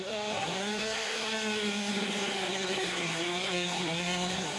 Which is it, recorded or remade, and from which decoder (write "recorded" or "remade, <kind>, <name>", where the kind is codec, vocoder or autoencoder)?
remade, codec, SNAC